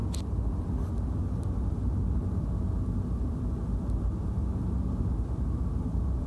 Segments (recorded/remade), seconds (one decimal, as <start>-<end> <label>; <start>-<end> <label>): 0.0-6.3 recorded